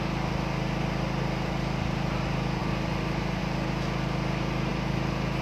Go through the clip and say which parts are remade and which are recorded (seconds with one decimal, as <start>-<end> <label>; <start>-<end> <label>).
0.0-5.4 recorded